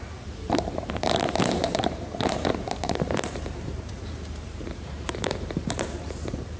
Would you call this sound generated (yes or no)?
yes